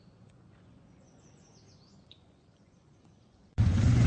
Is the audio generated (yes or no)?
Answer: yes